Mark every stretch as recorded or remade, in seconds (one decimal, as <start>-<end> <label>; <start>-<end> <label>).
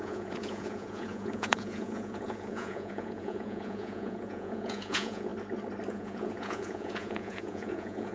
0.0-5.3 remade; 5.3-5.9 recorded; 5.9-8.1 remade